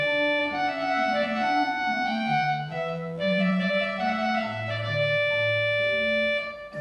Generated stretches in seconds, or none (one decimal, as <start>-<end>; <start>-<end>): 0.4-3.5